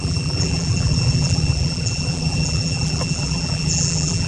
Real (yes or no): no